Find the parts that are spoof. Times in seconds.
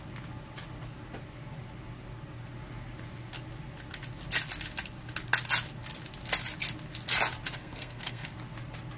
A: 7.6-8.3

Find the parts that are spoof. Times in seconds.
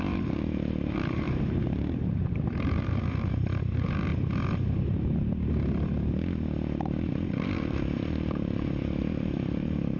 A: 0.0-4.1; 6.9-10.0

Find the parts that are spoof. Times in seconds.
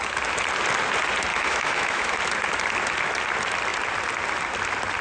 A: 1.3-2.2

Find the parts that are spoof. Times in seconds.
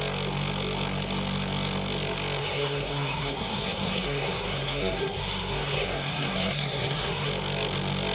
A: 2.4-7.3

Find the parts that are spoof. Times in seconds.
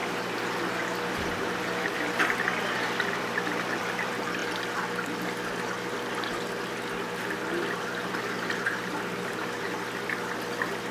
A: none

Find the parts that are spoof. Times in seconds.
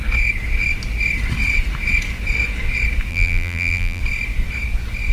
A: 3.1-4.0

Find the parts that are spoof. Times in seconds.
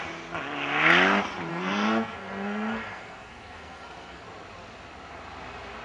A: 1.5-4.2